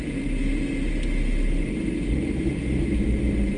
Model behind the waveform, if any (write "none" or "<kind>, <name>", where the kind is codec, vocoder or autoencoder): none